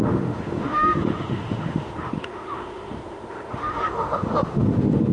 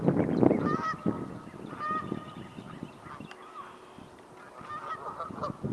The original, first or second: second